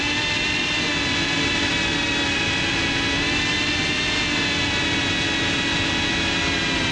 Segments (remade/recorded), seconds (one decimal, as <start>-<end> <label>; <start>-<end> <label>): 0.0-6.9 recorded